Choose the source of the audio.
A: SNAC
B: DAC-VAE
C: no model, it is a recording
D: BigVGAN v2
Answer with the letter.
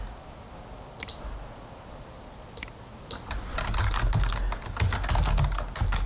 C